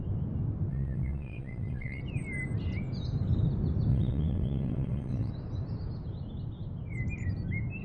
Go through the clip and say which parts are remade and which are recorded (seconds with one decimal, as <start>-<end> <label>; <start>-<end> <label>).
0.0-0.7 recorded; 0.7-2.0 remade; 2.0-3.9 recorded; 3.9-5.3 remade; 5.3-7.8 recorded